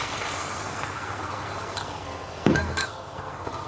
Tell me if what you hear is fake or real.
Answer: fake